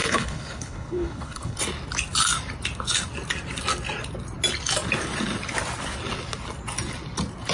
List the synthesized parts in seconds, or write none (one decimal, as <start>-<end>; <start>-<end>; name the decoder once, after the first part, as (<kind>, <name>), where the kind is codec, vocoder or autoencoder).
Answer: 0.0-1.6 (codec, HILCodec)